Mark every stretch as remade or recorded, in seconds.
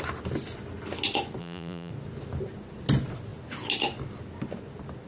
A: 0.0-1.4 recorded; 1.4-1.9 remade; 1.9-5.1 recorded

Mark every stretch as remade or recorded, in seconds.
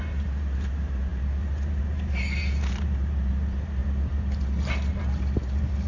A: 0.0-5.9 remade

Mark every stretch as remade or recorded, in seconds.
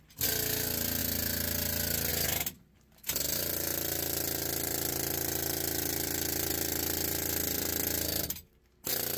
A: 0.0-9.2 recorded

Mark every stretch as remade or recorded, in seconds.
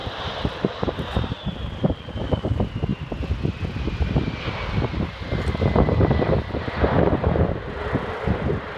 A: 0.0-1.5 remade; 1.5-8.8 recorded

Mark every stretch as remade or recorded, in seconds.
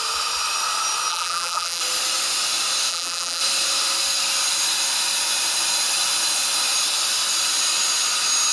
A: 0.0-1.1 recorded; 1.1-1.8 remade; 1.8-2.9 recorded; 2.9-3.4 remade; 3.4-8.5 recorded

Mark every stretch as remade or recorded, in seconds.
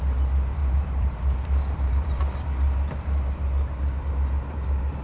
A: 0.0-0.6 recorded; 0.6-2.2 remade; 2.2-5.0 recorded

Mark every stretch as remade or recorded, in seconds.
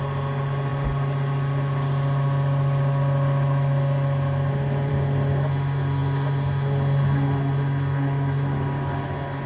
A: 0.0-9.5 recorded